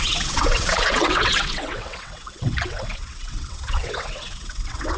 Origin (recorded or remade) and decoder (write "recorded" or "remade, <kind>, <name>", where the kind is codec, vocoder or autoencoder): remade, vocoder, WaveNeXt